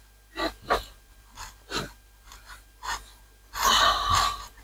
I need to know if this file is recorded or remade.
recorded